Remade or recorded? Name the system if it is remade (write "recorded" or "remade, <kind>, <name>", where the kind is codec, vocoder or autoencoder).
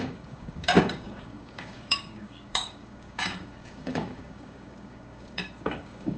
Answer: remade, codec, DAC